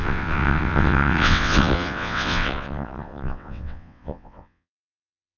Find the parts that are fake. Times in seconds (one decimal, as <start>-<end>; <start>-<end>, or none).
0.0-5.4